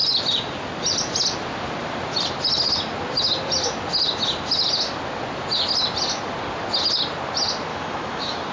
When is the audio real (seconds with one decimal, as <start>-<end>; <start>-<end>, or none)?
0.0-7.7